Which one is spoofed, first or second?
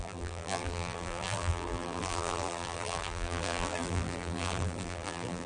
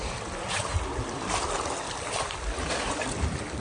first